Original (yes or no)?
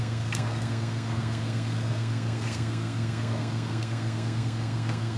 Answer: no